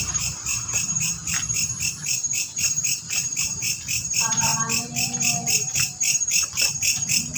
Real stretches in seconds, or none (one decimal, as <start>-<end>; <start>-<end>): 1.2-3.4; 4.5-7.4